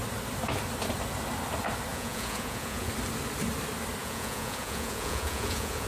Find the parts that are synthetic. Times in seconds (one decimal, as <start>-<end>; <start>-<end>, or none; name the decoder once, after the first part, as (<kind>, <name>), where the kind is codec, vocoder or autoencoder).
1.9-2.9 (vocoder, Vocos); 4.0-5.9